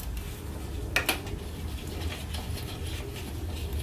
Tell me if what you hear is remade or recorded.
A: recorded